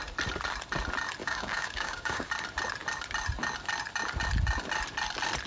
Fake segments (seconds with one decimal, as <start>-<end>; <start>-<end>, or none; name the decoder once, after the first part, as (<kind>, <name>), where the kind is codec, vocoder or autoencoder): 1.2-2.3 (codec, DAC)